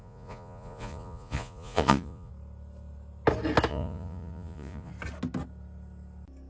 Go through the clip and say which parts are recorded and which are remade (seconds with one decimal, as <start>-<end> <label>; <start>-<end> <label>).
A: 0.0-2.3 remade; 2.3-3.7 recorded; 3.7-4.9 remade; 4.9-6.5 recorded